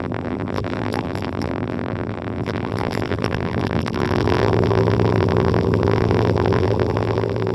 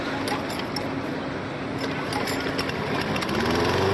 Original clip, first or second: second